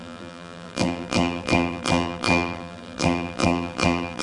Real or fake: fake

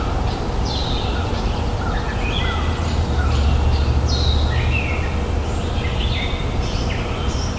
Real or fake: real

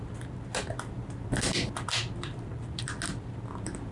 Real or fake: real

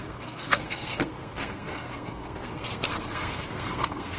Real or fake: fake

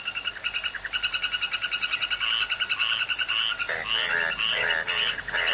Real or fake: real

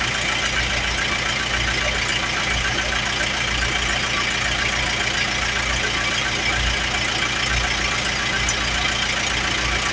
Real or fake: real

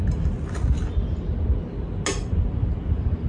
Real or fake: real